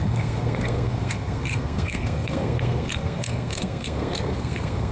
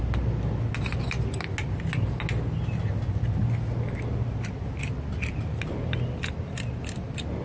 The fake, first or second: first